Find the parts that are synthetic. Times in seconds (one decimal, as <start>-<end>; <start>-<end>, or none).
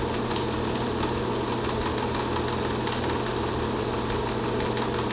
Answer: none